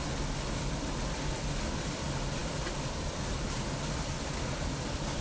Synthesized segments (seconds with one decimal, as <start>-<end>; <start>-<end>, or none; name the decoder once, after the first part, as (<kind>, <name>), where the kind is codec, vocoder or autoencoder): none